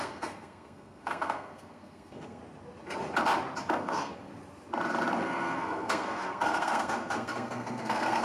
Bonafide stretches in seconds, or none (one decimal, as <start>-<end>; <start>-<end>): 2.4-3.7; 4.3-5.2